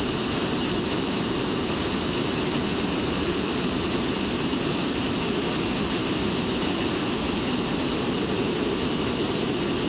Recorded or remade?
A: remade